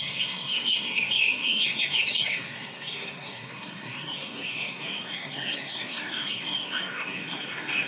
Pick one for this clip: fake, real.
fake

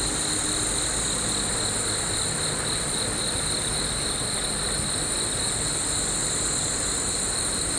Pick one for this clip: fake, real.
real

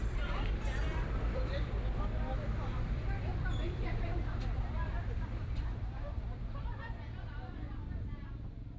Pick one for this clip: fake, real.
fake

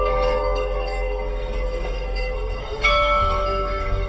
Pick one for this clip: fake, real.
fake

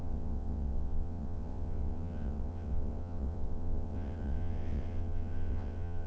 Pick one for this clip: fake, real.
fake